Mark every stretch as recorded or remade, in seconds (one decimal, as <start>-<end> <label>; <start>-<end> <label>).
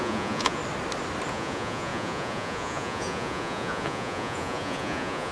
0.0-0.6 remade; 0.6-1.3 recorded; 1.3-5.3 remade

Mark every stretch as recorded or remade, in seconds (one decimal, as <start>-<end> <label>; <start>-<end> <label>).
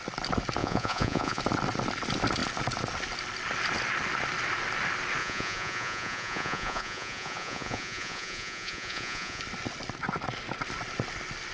0.0-0.6 recorded; 0.6-1.4 remade; 1.4-5.2 recorded; 5.2-9.4 remade; 9.4-11.5 recorded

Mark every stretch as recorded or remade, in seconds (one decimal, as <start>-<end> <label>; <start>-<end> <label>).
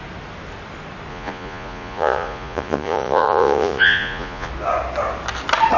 0.0-1.1 recorded; 1.1-4.5 remade; 4.5-5.8 recorded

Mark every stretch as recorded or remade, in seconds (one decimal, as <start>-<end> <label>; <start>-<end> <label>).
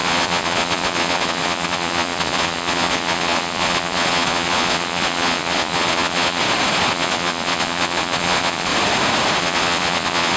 0.0-6.4 remade; 6.4-6.9 recorded; 6.9-8.7 remade; 8.7-9.4 recorded; 9.4-10.4 remade